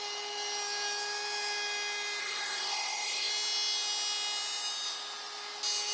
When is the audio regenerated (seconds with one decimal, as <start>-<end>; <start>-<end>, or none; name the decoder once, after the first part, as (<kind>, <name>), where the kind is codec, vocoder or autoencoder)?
2.2-3.3 (codec, ZipCodec)